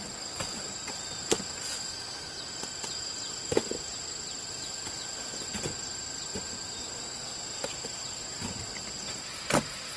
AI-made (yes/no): no